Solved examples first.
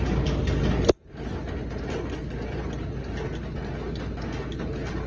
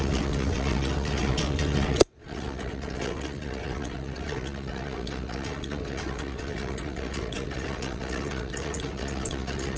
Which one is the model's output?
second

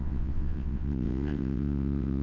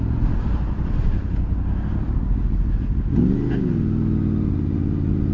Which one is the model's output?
first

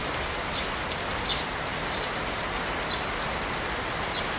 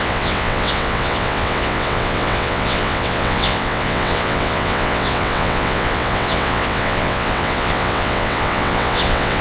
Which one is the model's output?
second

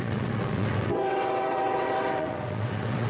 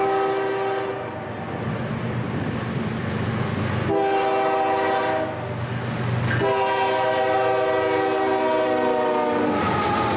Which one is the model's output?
first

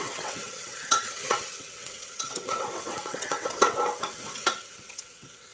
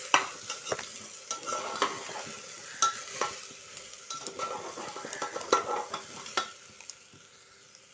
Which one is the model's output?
first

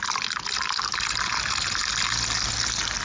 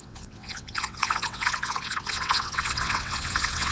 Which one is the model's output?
second